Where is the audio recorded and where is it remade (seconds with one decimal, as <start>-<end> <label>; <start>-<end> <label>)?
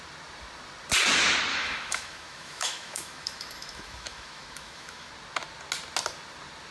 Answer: 0.0-1.5 recorded; 1.5-5.1 remade; 5.1-6.7 recorded